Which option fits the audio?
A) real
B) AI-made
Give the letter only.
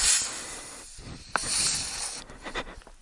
A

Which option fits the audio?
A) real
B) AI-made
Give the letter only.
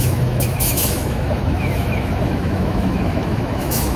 B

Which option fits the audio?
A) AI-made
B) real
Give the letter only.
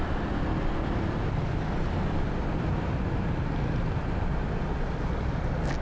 B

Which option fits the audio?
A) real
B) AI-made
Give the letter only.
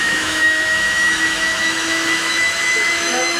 B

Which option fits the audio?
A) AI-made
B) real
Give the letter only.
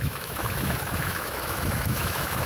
A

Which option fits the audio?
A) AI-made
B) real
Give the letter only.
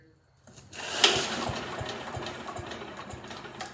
B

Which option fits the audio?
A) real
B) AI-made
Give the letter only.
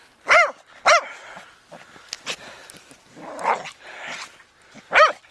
A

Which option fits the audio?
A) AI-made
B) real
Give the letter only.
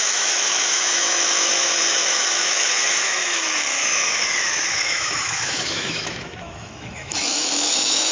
A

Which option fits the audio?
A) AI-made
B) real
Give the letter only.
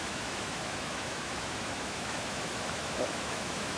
A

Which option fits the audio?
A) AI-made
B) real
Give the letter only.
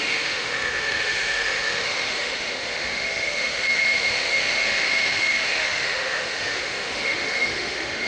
A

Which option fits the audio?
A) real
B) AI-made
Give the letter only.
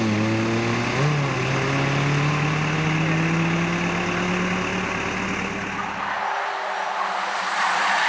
A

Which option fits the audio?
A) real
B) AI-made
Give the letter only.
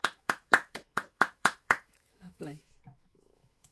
B